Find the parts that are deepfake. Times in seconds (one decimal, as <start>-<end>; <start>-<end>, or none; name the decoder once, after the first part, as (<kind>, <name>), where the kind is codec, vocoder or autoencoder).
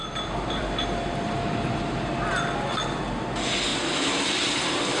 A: 0.0-3.0 (vocoder, BigVGAN v2); 3.7-5.0